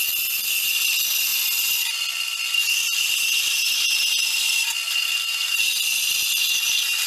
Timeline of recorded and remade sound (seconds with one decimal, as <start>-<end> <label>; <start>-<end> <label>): 0.0-7.1 recorded